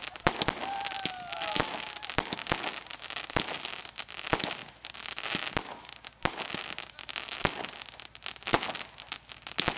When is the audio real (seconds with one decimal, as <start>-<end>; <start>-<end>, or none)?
0.0-9.8